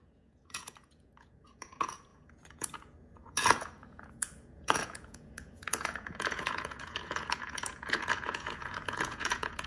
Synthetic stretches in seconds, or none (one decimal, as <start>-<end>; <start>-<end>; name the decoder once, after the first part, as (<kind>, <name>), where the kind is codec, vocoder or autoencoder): 0.0-9.7 (vocoder, Vocos)